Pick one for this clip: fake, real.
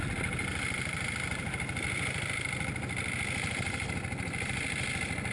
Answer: real